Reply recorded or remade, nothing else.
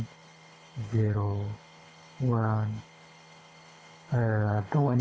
remade